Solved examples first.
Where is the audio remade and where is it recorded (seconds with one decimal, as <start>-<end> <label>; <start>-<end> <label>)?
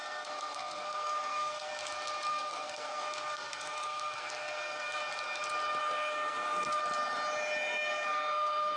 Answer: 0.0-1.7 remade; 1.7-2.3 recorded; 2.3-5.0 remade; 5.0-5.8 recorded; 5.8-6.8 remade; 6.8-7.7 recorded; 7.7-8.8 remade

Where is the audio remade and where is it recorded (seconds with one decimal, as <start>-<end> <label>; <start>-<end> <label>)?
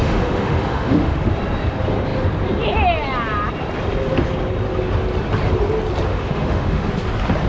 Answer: 0.0-1.3 remade; 1.3-6.1 recorded; 6.1-6.9 remade; 6.9-7.5 recorded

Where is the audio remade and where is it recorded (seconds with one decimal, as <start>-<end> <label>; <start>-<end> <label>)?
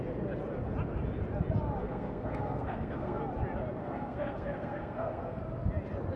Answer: 0.0-1.8 recorded; 1.8-3.2 remade; 3.2-3.8 recorded; 3.8-5.4 remade; 5.4-6.2 recorded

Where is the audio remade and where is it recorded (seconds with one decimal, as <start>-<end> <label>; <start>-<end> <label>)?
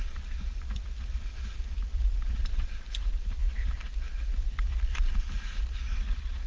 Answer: 0.0-6.5 remade